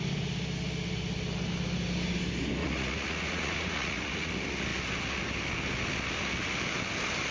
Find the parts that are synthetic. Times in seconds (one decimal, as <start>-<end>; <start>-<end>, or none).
2.6-4.3